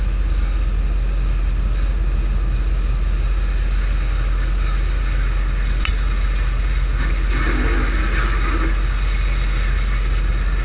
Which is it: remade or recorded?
recorded